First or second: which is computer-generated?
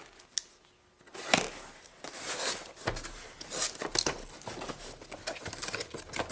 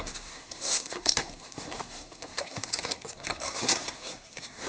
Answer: second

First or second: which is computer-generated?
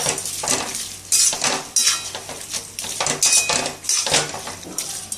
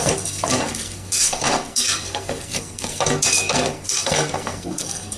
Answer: second